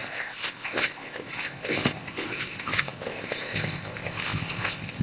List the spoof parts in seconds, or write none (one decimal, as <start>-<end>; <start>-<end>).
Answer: 0.0-5.0